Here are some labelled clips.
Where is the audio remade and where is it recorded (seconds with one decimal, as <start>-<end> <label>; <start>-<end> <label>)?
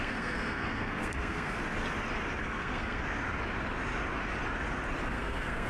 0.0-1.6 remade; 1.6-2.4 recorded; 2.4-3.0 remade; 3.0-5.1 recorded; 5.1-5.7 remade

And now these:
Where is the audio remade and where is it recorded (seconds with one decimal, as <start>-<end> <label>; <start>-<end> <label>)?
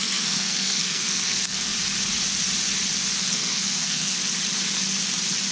0.0-1.7 remade; 1.7-3.2 recorded; 3.2-4.2 remade; 4.2-5.5 recorded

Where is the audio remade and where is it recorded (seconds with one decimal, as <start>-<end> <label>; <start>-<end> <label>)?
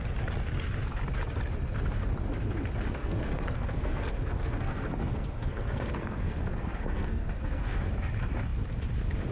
0.0-3.0 recorded; 3.0-7.9 remade; 7.9-9.3 recorded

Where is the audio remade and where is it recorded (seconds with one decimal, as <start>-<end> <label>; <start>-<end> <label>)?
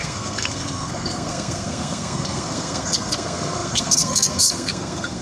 0.0-5.2 remade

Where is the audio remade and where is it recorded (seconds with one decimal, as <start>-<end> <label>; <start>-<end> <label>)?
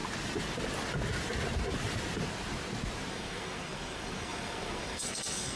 0.0-3.1 recorded; 3.1-5.6 remade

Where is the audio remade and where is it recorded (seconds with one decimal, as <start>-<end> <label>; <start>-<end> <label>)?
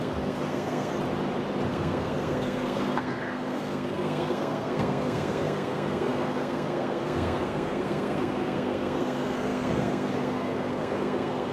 0.0-0.9 remade; 0.9-1.7 recorded; 1.7-11.5 remade